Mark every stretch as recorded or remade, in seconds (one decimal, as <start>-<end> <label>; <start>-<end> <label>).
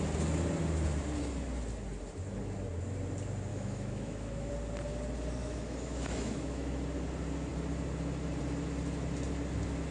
0.0-3.5 recorded; 3.5-4.5 remade; 4.5-5.4 recorded; 5.4-6.7 remade; 6.7-9.9 recorded